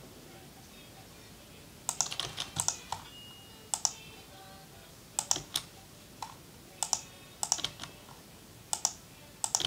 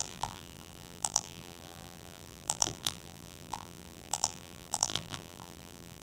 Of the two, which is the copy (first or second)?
second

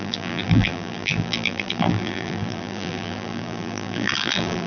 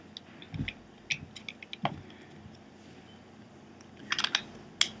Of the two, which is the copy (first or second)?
first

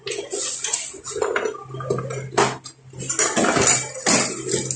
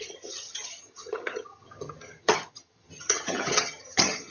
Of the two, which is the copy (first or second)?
second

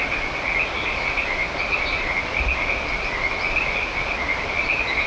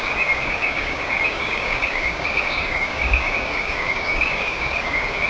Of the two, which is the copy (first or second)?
second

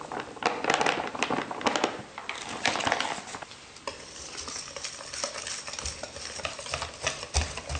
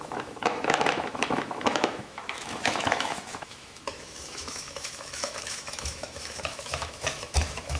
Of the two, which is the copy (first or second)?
second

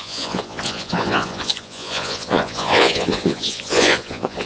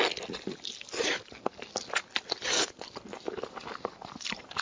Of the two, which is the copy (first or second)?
first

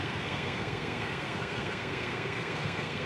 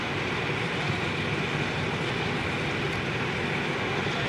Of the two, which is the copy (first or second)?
first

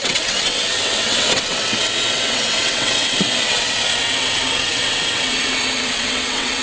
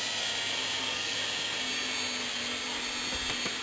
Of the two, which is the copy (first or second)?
first